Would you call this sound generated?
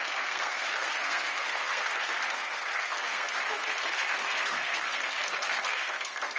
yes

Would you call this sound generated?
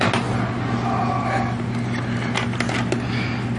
no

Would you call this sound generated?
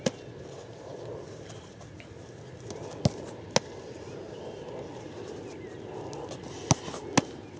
no